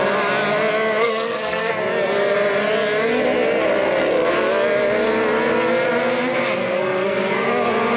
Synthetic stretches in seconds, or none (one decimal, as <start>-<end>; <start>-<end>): 1.0-1.7; 6.6-7.5